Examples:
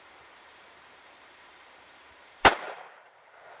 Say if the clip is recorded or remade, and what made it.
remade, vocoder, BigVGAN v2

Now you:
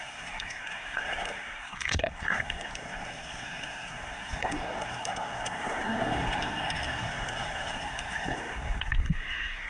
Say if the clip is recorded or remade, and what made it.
remade, codec, SNAC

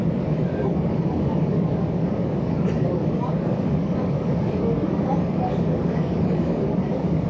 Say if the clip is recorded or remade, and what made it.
remade, codec, DAC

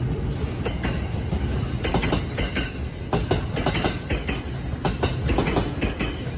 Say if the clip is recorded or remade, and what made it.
recorded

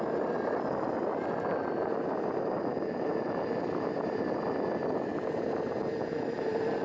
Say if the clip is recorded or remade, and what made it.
recorded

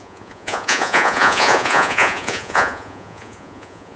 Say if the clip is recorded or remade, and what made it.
remade, vocoder, Vocos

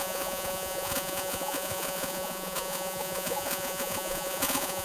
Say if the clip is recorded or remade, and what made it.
remade, vocoder, Vocos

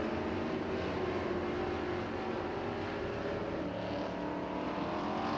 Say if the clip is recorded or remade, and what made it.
recorded